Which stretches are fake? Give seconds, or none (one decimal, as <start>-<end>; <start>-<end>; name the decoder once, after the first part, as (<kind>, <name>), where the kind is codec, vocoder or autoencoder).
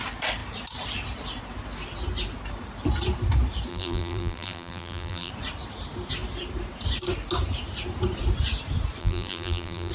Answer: 3.7-5.3 (vocoder, BigVGAN v2); 9.0-9.9